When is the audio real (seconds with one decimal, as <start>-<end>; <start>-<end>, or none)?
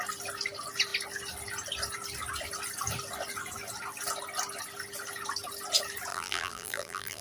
0.0-6.1